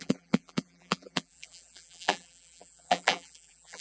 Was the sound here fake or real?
fake